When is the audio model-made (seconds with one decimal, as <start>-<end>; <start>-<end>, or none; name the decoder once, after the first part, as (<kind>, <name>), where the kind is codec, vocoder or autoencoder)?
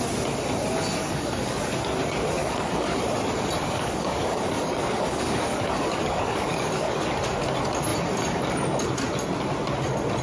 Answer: 1.0-1.6 (codec, DAC); 2.4-3.0; 3.6-7.1